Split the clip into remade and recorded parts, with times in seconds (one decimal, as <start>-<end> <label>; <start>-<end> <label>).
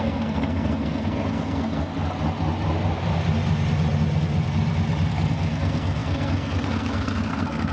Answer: 0.0-1.9 remade; 1.9-5.1 recorded; 5.1-7.7 remade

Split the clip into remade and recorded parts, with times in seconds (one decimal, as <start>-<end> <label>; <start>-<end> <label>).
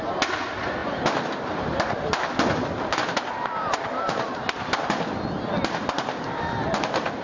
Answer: 0.0-7.2 recorded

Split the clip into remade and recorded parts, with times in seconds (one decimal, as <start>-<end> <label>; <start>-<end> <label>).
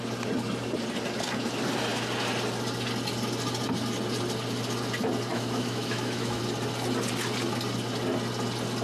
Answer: 0.0-5.3 recorded; 5.3-6.4 remade; 6.4-8.8 recorded